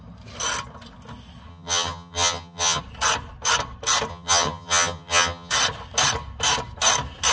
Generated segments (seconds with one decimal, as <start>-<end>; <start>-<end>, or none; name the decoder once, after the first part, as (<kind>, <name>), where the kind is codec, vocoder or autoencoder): 1.5-2.8 (vocoder, HiFi-GAN); 4.1-5.5